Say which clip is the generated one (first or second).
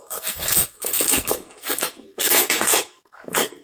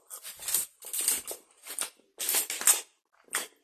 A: first